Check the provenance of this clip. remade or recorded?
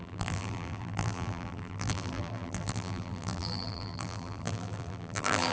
remade